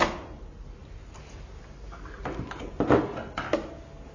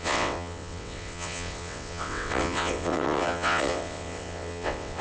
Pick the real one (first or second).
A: first